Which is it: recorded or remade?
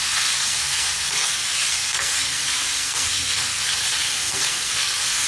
remade